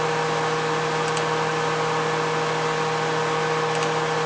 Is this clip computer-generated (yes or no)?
no